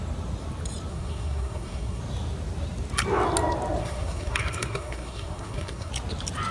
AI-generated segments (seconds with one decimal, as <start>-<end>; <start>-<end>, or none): 0.9-2.0; 3.8-5.9